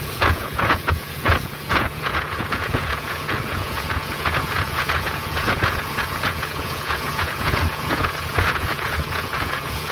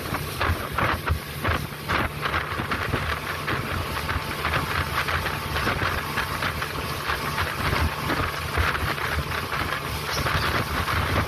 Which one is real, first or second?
second